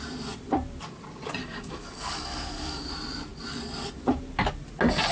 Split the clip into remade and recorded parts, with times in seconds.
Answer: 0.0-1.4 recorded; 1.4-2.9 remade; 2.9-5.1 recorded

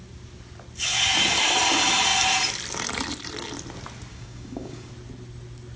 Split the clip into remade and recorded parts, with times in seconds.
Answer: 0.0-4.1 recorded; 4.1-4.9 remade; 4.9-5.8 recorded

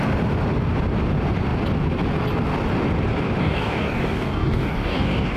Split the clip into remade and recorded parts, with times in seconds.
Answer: 0.0-3.4 recorded; 3.4-5.4 remade